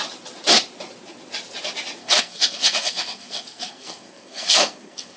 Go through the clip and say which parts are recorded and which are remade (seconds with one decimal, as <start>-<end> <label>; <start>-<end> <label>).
0.0-2.0 recorded; 2.0-5.2 remade